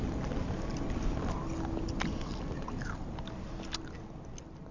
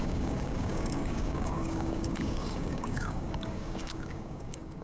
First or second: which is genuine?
first